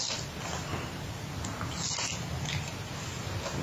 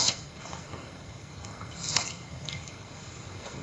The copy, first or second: second